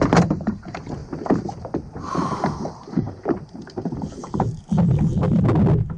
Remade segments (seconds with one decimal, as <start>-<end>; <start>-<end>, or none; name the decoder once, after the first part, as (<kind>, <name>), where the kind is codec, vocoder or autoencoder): 1.0-4.6 (vocoder, BigVGAN v2)